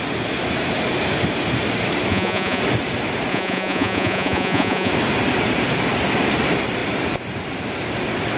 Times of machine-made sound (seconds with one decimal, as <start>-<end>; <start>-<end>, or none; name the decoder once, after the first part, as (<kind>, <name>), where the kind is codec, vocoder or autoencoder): 2.1-2.6 (vocoder, Vocos); 3.3-4.9